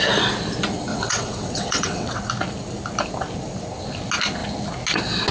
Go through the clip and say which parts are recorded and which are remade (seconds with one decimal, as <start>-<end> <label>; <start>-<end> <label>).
0.0-0.9 recorded; 0.9-2.2 remade; 2.2-5.3 recorded